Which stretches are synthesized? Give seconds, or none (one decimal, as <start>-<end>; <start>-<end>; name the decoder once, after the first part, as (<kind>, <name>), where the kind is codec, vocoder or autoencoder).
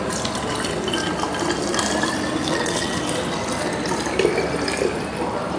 2.4-3.0 (vocoder, WaveNeXt)